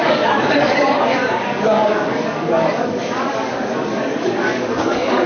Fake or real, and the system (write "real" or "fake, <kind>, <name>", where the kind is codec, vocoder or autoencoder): fake, codec, DAC